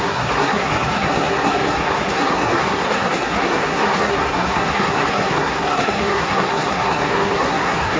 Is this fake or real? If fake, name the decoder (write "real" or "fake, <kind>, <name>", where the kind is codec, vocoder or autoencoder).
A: fake, codec, SNAC